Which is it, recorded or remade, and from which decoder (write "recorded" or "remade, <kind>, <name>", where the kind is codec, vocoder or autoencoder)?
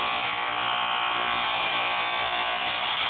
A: recorded